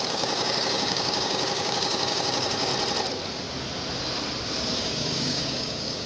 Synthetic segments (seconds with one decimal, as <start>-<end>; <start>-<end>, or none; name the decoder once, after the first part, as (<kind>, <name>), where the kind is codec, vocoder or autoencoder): 0.0-2.7 (codec, DAC); 4.8-6.1